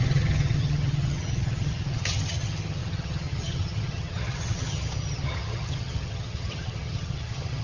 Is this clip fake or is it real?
fake